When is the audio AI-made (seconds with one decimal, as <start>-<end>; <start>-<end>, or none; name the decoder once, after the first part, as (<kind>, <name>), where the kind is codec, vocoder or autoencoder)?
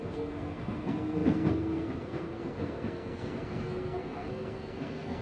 0.0-5.2 (codec, SNAC)